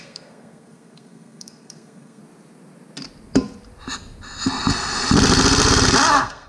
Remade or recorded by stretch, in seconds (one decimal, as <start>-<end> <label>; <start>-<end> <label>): 0.0-2.2 remade; 2.2-6.1 recorded; 6.1-6.5 remade